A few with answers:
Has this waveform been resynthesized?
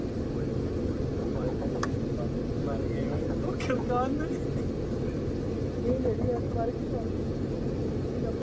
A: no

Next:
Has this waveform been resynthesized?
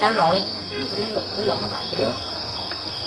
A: yes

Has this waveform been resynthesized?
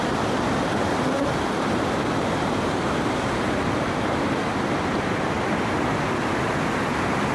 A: no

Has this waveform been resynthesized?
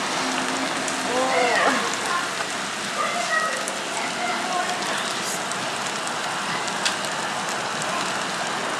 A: no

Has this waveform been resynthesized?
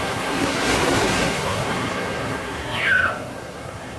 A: yes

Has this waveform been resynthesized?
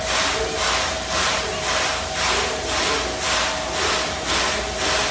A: no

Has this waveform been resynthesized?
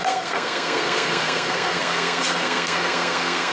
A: yes